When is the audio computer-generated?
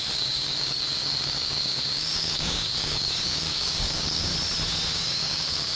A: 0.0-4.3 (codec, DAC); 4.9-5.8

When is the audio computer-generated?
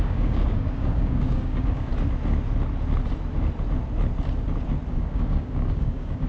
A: 0.0-1.9 (codec, DAC); 4.9-6.3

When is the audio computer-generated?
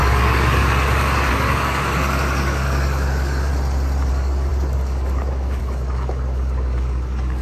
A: 0.0-3.5 (codec, DAC); 4.1-7.4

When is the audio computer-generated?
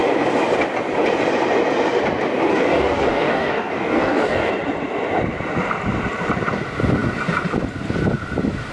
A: 2.5-4.5 (codec, DAC)